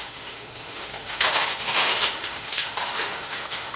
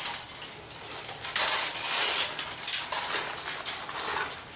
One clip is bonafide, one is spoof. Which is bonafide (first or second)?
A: second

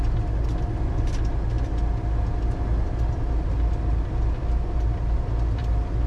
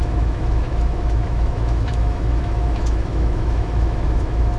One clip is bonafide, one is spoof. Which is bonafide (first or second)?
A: first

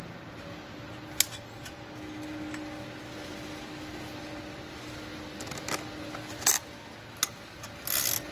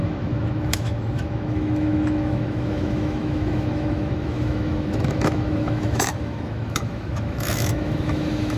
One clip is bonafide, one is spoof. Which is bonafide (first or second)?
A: first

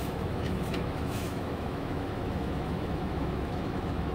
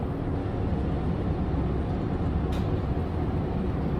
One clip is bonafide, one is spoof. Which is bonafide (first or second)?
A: second